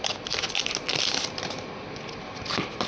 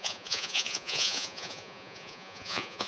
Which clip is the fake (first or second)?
second